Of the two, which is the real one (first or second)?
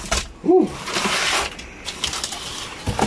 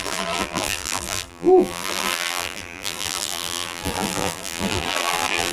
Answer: first